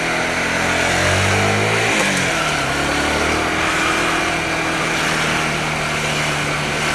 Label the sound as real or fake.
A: real